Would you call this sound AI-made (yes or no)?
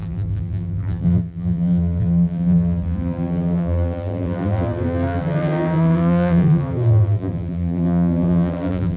yes